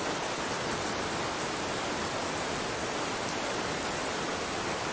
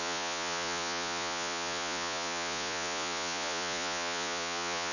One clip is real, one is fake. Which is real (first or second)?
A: first